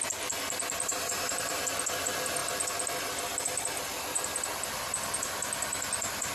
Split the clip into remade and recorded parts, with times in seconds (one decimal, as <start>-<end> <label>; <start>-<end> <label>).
0.0-0.9 recorded; 0.9-1.6 remade; 1.6-6.3 recorded